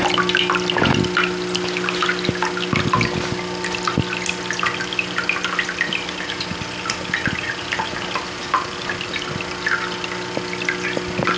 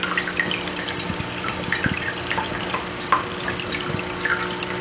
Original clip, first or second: first